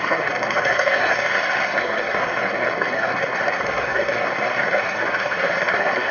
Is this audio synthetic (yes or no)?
yes